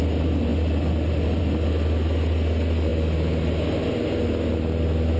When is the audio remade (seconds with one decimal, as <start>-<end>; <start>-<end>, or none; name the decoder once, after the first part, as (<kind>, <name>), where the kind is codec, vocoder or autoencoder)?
none